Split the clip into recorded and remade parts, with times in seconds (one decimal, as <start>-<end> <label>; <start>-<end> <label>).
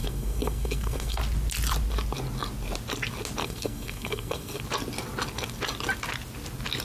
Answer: 0.0-1.2 remade; 1.2-3.4 recorded; 3.4-4.6 remade; 4.6-6.8 recorded